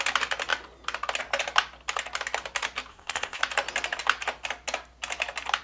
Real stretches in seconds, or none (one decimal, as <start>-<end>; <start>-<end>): 0.0-2.9; 3.4-5.6